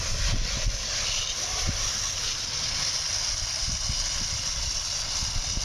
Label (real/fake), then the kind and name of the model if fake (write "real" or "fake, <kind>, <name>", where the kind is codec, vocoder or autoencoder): real